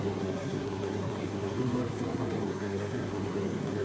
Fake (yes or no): yes